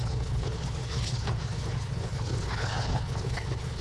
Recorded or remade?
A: remade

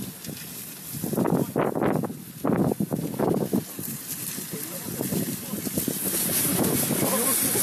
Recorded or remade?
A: recorded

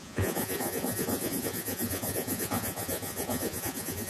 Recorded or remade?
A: remade